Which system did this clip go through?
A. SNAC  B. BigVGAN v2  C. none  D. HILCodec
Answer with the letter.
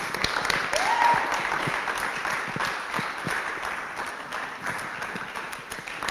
C